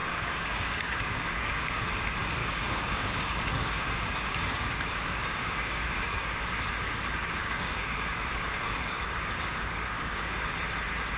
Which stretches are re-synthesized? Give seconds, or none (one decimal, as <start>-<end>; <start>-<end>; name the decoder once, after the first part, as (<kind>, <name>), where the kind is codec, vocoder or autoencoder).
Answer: 0.0-1.9 (codec, DAC); 2.4-6.7; 7.4-10.5